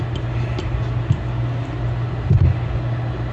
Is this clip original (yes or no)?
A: yes